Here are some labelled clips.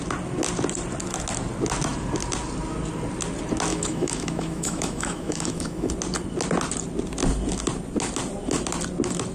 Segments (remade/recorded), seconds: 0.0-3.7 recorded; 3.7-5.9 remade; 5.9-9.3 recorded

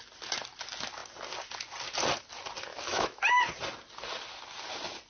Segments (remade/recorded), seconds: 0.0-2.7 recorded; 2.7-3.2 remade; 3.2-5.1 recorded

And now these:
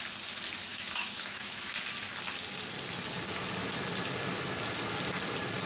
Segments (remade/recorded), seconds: 0.0-0.7 recorded; 0.7-1.6 remade; 1.6-5.7 recorded

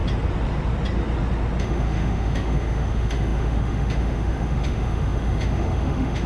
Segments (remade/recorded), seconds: 0.0-1.6 recorded; 1.6-6.3 remade

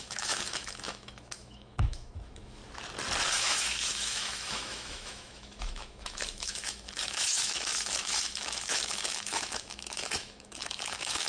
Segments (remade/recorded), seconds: 0.0-2.6 remade; 2.6-3.3 recorded; 3.3-11.3 remade

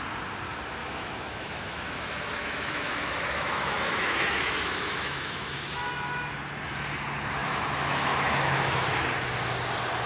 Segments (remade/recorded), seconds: 0.0-0.8 recorded; 0.8-5.8 remade; 5.8-7.4 recorded; 7.4-8.6 remade; 8.6-10.1 recorded